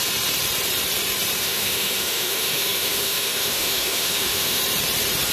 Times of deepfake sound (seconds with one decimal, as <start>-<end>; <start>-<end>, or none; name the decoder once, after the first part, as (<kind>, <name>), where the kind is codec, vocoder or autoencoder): 1.4-4.6 (autoencoder, DAC-VAE)